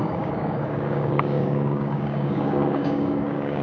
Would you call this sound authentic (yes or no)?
no